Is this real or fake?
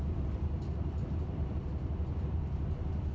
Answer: fake